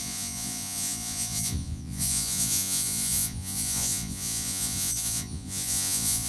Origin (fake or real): fake